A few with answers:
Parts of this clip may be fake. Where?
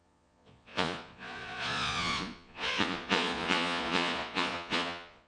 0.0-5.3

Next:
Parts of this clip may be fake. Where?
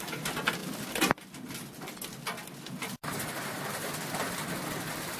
none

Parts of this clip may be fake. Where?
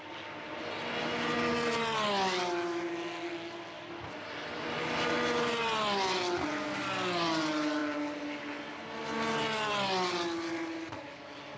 none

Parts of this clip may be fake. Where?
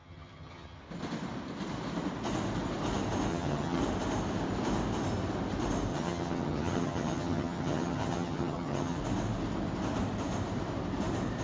0.0-0.8; 3.3-3.8; 5.9-9.0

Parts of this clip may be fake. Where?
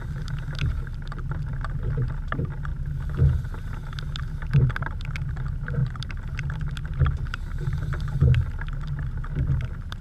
none